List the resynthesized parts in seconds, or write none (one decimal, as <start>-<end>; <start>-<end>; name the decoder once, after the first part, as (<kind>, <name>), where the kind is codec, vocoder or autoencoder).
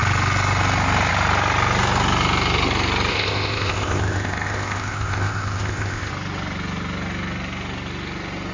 3.1-6.1 (codec, ZipCodec)